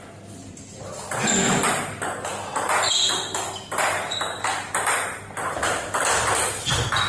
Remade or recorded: recorded